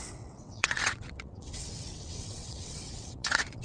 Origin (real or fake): fake